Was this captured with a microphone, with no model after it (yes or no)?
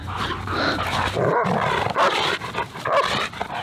yes